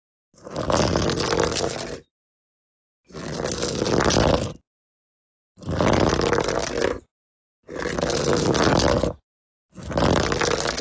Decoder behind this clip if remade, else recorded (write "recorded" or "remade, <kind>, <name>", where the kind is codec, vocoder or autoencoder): recorded